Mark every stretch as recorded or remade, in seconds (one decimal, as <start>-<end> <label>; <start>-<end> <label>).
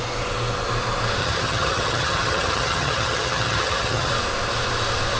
0.0-1.2 recorded; 1.2-4.1 remade; 4.1-5.2 recorded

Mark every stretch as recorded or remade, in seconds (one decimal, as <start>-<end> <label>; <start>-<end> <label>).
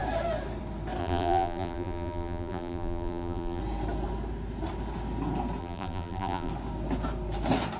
0.0-1.0 recorded; 1.0-3.6 remade; 3.6-5.6 recorded; 5.6-6.5 remade; 6.5-7.8 recorded